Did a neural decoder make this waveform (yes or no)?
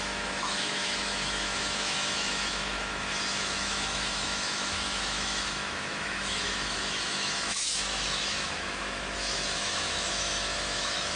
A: yes